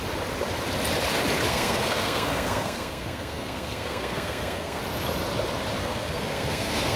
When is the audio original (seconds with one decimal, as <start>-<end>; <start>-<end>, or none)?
0.0-1.5; 4.8-5.8